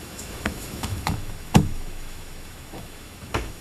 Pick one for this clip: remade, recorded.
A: remade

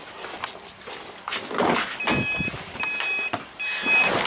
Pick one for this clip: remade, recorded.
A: recorded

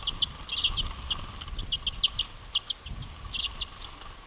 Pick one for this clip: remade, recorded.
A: recorded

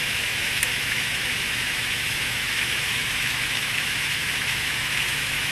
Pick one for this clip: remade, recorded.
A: remade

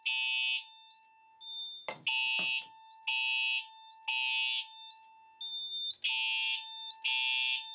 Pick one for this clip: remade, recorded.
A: recorded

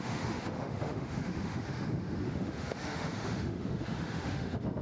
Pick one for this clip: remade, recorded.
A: remade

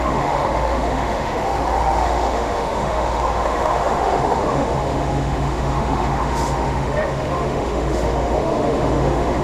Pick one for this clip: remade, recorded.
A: remade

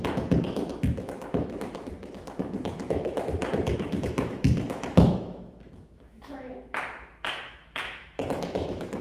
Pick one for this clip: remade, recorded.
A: remade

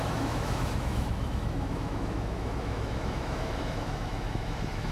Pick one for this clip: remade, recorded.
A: remade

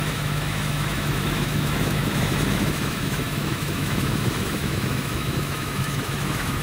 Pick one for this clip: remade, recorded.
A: remade